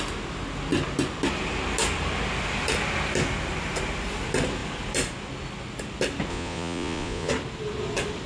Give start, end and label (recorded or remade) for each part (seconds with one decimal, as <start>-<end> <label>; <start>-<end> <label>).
0.0-6.3 recorded; 6.3-7.3 remade; 7.3-8.3 recorded